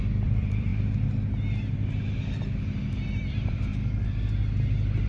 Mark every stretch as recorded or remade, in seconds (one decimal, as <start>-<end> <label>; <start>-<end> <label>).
0.0-0.7 remade; 0.7-3.3 recorded; 3.3-3.7 remade; 3.7-5.1 recorded